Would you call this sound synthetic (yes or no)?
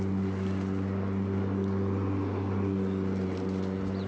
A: no